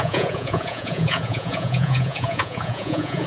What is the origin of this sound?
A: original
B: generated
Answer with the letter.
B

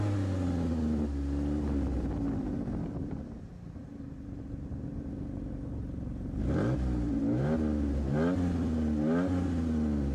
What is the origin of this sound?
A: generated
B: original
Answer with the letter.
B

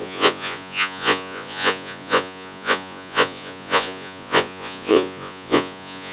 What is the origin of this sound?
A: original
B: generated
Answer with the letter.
B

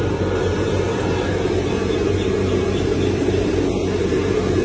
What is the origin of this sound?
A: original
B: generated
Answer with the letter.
A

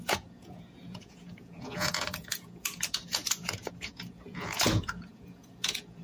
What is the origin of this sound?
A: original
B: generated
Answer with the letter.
B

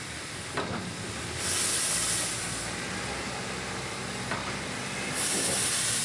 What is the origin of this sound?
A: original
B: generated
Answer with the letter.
A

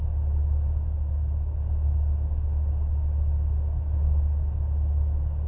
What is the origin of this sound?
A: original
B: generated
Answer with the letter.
A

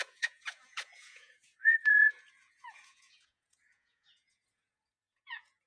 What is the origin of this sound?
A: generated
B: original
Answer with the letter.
A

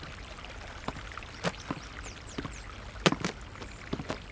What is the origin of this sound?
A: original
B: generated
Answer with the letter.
A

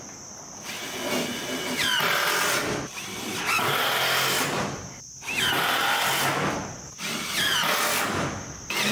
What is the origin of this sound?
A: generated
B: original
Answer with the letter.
B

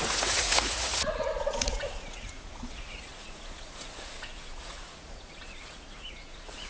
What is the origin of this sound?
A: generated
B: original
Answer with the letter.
A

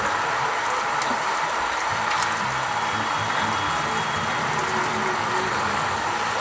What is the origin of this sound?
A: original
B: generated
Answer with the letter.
A